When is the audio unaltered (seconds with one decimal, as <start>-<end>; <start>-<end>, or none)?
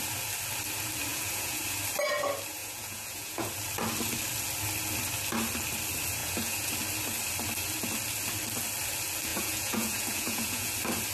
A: 0.0-1.1; 1.6-2.6; 3.5-6.2; 6.7-9.3; 10.7-11.1